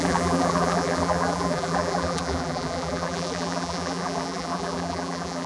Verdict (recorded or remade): remade